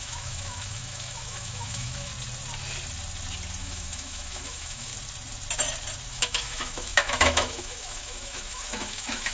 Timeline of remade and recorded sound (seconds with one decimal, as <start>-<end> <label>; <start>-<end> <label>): 0.0-2.1 remade; 2.1-3.6 recorded; 3.6-4.9 remade; 4.9-6.1 recorded; 6.1-9.3 remade